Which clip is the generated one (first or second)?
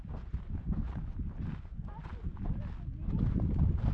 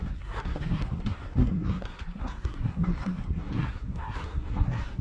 second